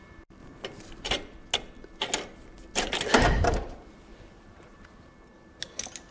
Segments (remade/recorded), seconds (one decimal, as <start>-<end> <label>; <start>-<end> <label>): 0.0-0.4 recorded; 0.4-1.1 remade; 1.1-6.1 recorded